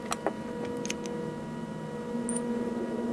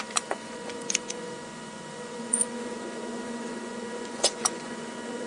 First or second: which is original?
first